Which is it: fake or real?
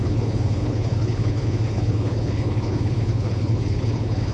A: fake